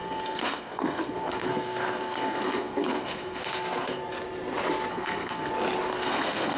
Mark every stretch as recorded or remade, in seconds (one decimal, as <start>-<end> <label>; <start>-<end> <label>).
0.0-4.0 remade; 4.0-4.9 recorded; 4.9-5.5 remade; 5.5-5.9 recorded; 5.9-6.6 remade